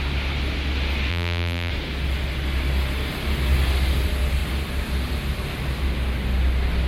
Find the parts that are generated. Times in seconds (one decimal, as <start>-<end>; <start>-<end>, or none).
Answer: 1.1-1.7